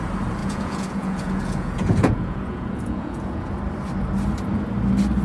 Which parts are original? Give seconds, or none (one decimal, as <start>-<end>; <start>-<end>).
0.0-0.4; 3.5-5.2